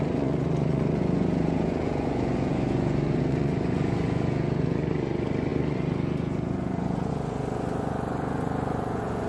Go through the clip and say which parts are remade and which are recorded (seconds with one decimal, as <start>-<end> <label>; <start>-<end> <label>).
0.0-9.3 remade